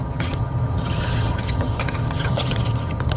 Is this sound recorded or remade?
remade